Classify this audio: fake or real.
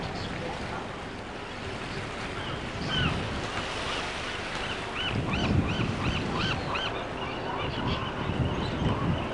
real